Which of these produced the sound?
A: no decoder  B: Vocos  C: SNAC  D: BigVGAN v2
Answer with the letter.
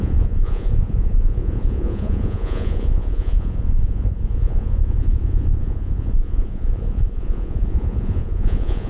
B